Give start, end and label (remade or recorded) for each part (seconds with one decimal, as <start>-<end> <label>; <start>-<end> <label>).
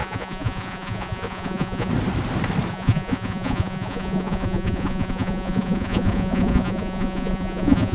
0.0-1.9 remade; 1.9-2.7 recorded; 2.7-7.9 remade